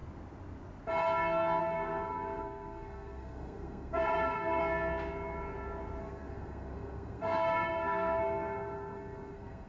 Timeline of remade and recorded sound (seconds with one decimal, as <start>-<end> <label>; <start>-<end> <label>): 0.0-1.6 recorded; 1.6-4.6 remade; 4.6-6.0 recorded; 6.0-9.7 remade